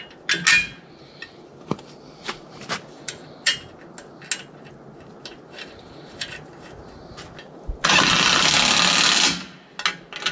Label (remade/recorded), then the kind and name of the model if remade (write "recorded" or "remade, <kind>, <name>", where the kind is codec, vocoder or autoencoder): recorded